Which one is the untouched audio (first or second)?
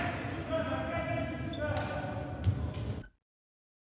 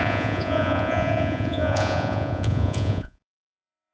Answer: first